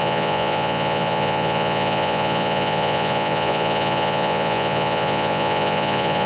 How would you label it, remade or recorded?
remade